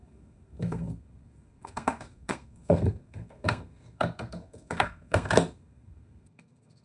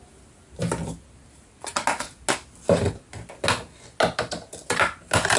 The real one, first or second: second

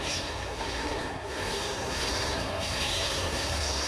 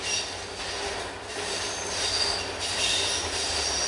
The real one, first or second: second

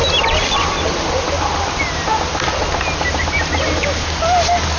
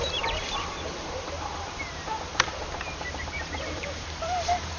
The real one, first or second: first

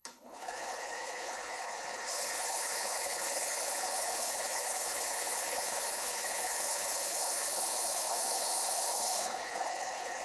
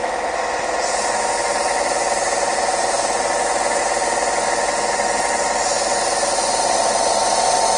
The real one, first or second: second